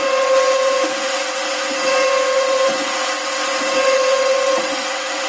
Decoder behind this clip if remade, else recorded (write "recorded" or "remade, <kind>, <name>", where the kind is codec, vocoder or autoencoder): remade, vocoder, WaveNeXt